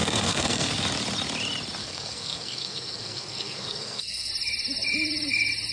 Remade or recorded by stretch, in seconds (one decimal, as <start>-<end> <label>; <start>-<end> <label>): 0.0-0.7 remade; 0.7-1.8 recorded; 1.8-4.3 remade; 4.3-5.7 recorded